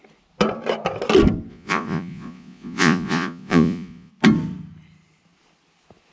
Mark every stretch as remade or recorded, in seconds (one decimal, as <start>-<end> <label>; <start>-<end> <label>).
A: 0.0-1.5 recorded; 1.5-4.1 remade; 4.1-6.1 recorded